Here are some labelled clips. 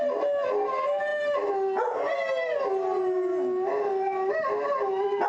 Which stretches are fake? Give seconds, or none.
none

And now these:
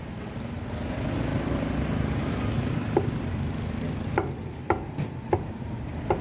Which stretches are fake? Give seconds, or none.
none